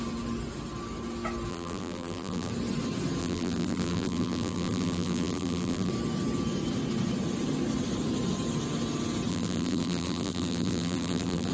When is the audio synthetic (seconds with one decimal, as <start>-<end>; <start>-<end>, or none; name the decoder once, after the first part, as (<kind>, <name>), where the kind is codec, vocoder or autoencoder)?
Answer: 1.5-2.5 (vocoder, BigVGAN v2); 3.2-5.9; 9.3-11.5